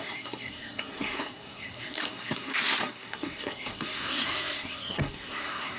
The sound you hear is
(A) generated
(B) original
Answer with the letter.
A